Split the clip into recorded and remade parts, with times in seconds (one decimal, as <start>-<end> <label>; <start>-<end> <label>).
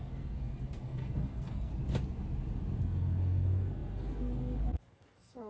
0.0-1.7 remade; 1.7-2.8 recorded; 2.8-5.5 remade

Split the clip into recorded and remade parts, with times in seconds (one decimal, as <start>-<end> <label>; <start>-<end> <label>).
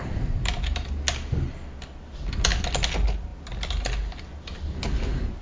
0.0-5.4 recorded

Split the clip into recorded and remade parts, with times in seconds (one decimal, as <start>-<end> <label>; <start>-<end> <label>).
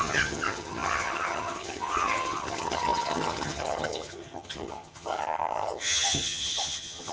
0.0-7.1 remade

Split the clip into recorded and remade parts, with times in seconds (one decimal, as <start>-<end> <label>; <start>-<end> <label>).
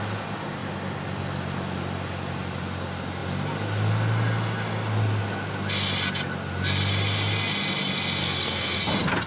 0.0-8.2 recorded; 8.2-8.8 remade; 8.8-9.3 recorded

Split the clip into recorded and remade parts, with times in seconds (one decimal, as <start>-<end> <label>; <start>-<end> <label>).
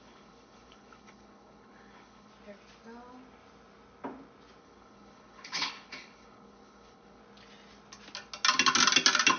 0.0-2.3 remade; 2.3-4.6 recorded; 4.6-7.2 remade; 7.2-9.4 recorded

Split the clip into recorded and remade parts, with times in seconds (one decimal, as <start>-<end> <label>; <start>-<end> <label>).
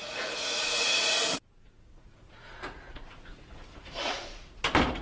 0.0-1.1 remade; 1.1-1.6 recorded; 1.6-4.6 remade; 4.6-5.0 recorded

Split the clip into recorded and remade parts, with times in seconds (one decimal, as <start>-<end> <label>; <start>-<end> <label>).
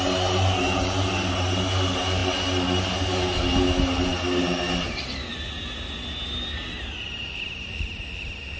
0.0-6.5 recorded; 6.5-8.6 remade